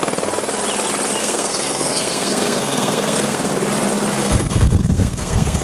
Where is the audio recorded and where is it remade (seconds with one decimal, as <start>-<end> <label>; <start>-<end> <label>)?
0.0-1.2 recorded; 1.2-3.5 remade; 3.5-4.2 recorded; 4.2-5.6 remade